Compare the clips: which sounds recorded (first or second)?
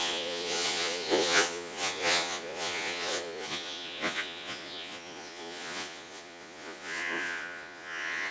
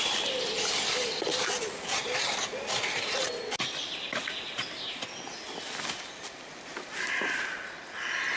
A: second